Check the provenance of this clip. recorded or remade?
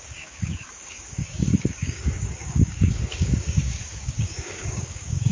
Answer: remade